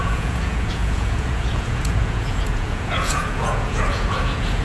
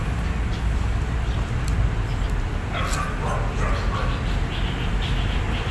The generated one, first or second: first